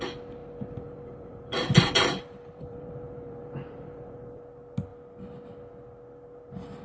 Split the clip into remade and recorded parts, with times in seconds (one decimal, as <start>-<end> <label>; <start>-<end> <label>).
0.0-0.4 recorded; 0.4-4.4 remade; 4.4-6.8 recorded